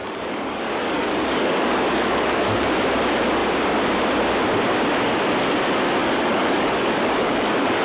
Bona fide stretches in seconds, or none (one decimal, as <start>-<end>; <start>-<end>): 2.7-6.0